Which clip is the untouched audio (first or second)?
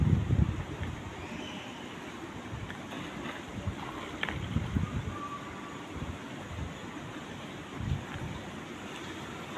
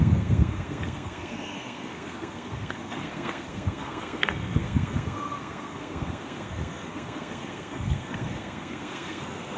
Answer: first